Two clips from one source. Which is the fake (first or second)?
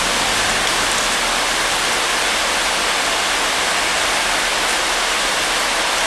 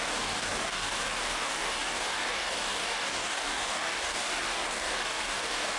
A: second